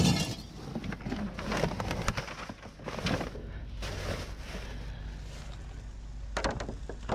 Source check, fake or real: real